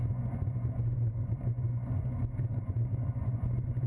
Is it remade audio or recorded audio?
remade